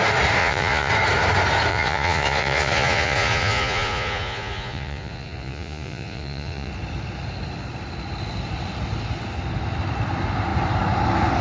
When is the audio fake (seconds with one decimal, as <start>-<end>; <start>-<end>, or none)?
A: 0.4-0.9; 1.7-6.7